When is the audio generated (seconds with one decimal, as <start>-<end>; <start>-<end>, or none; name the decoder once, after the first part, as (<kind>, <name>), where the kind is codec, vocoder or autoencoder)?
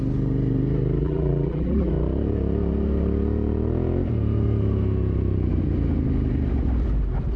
1.0-1.9 (vocoder, BigVGAN v2)